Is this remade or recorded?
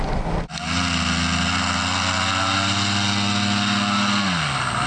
recorded